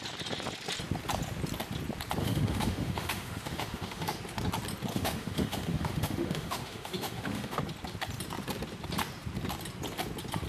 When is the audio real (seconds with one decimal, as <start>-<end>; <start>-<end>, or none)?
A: 0.0-2.2; 4.2-4.9; 7.6-10.5